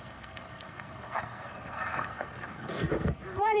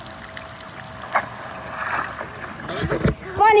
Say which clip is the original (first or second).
second